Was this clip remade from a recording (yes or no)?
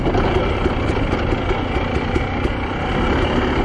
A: no